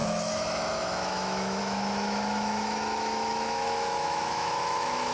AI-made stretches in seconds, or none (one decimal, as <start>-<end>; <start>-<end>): 0.0-5.1